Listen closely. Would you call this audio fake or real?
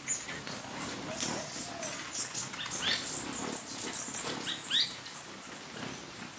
real